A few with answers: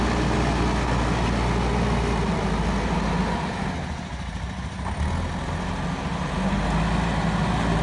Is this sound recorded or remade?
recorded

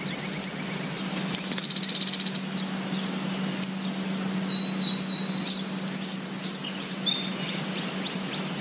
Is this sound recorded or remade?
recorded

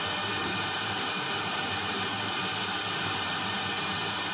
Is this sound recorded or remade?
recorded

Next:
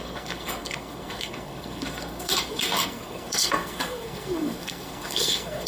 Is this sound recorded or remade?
remade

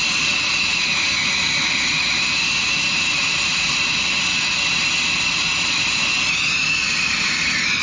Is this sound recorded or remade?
recorded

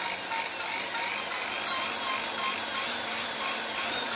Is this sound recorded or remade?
recorded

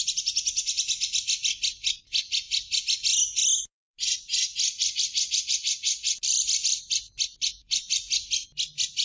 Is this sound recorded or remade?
recorded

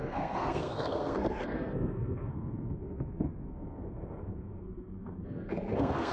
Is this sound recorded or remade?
remade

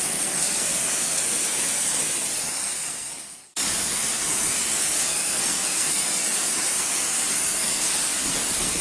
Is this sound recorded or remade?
remade